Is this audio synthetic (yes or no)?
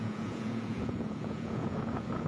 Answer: yes